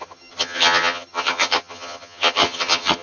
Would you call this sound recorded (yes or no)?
no